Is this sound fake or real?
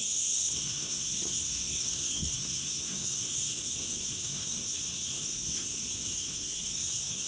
fake